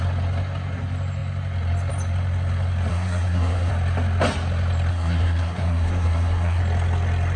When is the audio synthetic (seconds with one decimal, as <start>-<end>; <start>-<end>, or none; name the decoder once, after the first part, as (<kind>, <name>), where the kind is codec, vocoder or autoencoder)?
2.9-3.7 (codec, SNAC); 4.9-6.6